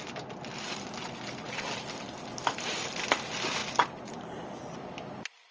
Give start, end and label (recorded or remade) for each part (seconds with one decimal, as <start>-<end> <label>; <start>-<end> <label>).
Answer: 0.0-0.5 recorded; 0.5-3.0 remade; 3.0-5.5 recorded